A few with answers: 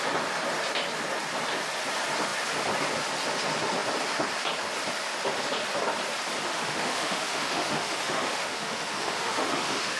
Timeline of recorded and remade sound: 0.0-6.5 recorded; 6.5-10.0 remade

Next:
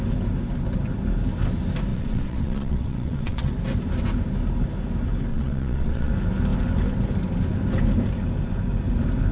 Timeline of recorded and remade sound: 0.0-1.9 recorded; 1.9-3.5 remade; 3.5-5.3 recorded; 5.3-6.1 remade; 6.1-9.3 recorded

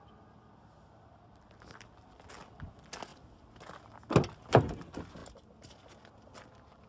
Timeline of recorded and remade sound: 0.0-6.9 recorded

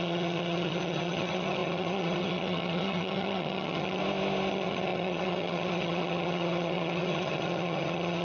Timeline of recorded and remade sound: 0.0-4.0 remade; 4.0-4.5 recorded; 4.5-8.2 remade

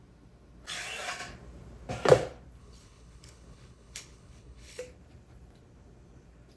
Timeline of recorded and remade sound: 0.0-2.6 recorded; 2.6-4.8 remade; 4.8-6.6 recorded

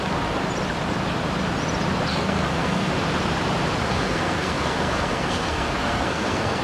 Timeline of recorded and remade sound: 0.0-2.1 recorded; 2.1-2.9 remade; 2.9-3.8 recorded; 3.8-6.6 remade